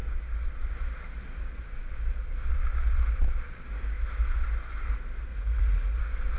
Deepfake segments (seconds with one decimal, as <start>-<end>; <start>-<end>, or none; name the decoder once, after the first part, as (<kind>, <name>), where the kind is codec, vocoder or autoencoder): 5.3-6.0 (vocoder, Vocos)